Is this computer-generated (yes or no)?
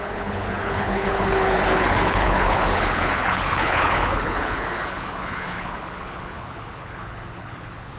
yes